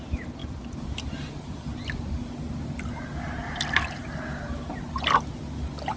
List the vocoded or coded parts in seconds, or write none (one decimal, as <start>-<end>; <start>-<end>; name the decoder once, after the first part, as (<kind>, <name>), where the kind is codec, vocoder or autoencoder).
none